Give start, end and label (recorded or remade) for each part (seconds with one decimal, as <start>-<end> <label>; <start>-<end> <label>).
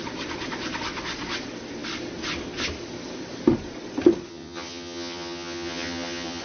0.0-4.3 recorded; 4.3-6.4 remade